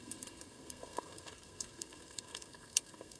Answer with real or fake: fake